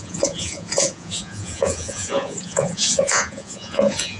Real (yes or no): no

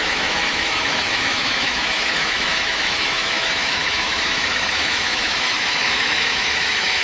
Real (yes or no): no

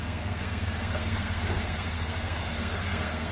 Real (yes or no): no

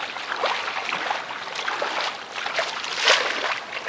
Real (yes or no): yes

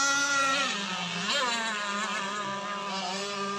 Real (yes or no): yes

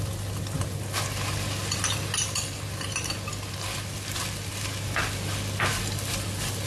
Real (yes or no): yes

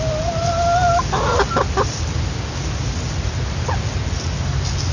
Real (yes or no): yes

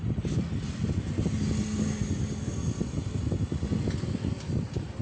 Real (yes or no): yes